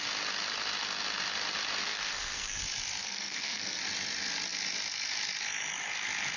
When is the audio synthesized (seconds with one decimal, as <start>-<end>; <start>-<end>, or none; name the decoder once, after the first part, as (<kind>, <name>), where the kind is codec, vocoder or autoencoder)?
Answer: 1.8-2.6 (codec, SNAC); 3.0-3.8